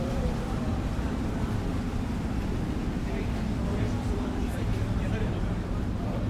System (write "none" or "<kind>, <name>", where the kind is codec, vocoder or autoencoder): vocoder, BigVGAN v2